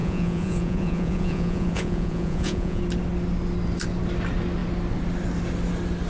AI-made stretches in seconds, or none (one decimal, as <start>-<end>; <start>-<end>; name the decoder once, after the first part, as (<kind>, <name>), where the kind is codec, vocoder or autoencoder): 0.0-2.8 (vocoder, Vocos)

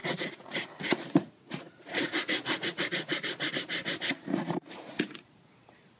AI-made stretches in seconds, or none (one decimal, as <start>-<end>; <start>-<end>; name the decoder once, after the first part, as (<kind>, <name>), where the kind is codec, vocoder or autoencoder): 0.0-3.5 (vocoder, Vocos); 4.3-5.2

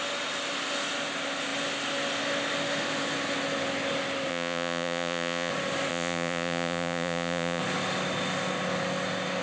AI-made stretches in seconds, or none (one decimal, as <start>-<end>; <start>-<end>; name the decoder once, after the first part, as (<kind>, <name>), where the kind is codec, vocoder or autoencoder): 4.3-5.5 (vocoder, Vocos); 5.9-7.6

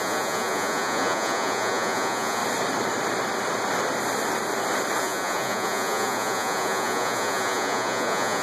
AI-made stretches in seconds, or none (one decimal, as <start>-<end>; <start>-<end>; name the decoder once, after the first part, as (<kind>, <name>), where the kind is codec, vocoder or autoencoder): 0.0-2.4 (vocoder, Vocos); 5.0-8.4

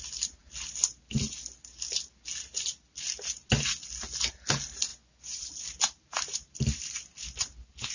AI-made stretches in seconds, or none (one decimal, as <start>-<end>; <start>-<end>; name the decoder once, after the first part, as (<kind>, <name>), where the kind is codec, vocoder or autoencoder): 4.9-5.5 (vocoder, Vocos)

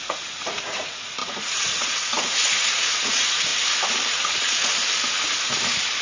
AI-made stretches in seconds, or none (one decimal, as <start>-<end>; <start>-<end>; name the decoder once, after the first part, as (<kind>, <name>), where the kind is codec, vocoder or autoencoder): 0.0-3.5 (vocoder, Vocos); 4.1-4.7

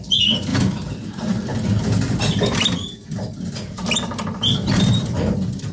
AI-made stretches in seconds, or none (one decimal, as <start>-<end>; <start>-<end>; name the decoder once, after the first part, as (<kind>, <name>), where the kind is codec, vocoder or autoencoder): none